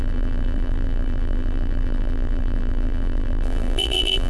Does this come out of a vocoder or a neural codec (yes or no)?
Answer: yes